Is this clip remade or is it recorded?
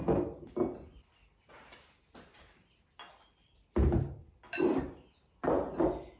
recorded